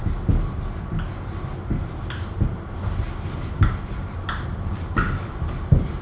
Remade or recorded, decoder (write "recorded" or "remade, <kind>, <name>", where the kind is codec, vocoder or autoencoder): recorded